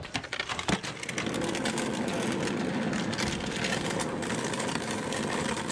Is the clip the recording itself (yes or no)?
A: yes